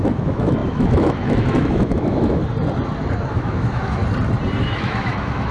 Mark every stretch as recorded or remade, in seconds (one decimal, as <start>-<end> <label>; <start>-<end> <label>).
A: 0.0-2.4 remade; 2.4-3.3 recorded; 3.3-4.0 remade; 4.0-4.6 recorded; 4.6-5.5 remade

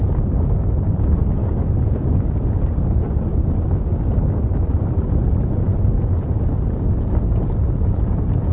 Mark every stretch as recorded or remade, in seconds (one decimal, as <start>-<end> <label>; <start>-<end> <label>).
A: 0.0-1.4 recorded; 1.4-2.9 remade; 2.9-3.3 recorded; 3.3-3.8 remade; 3.8-8.5 recorded

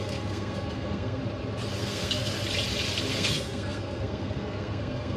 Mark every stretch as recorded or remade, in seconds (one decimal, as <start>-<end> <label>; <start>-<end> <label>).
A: 0.0-1.2 remade; 1.2-1.8 recorded; 1.8-2.3 remade; 2.3-3.1 recorded; 3.1-5.2 remade